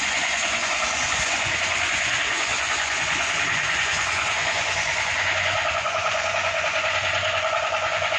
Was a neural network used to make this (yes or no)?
yes